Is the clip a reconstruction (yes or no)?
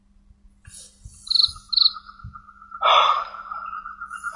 no